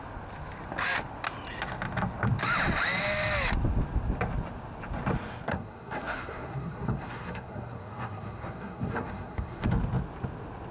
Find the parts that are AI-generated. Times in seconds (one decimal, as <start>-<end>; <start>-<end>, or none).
5.5-9.7